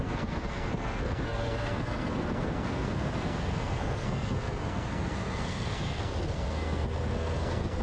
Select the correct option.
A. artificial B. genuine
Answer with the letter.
A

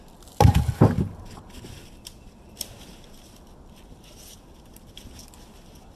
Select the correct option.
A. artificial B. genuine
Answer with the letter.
B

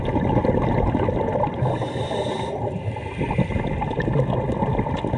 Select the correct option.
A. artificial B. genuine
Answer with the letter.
B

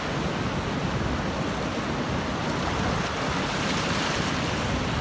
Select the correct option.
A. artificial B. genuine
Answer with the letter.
B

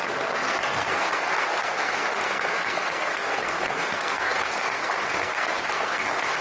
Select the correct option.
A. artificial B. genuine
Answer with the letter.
A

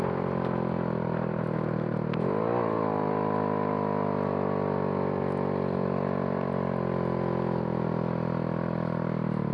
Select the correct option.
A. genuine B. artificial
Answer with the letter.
A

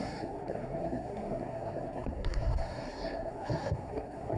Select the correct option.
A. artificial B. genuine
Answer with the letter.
A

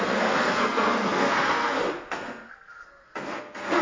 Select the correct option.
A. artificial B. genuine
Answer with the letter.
A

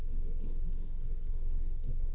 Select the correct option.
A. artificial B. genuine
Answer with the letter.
A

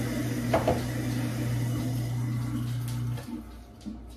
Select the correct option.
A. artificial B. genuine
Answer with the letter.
B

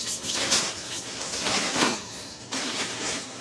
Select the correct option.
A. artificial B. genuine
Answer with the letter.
A